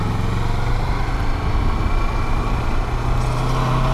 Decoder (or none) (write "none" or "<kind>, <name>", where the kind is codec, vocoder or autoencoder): none